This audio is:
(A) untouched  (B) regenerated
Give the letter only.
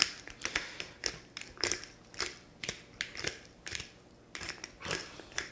B